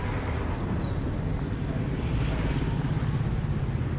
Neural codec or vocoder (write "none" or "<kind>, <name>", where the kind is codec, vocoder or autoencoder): none